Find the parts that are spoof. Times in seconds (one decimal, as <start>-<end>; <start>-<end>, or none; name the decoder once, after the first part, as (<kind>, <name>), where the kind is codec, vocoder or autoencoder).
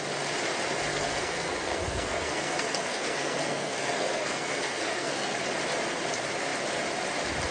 0.9-5.4 (codec, SNAC)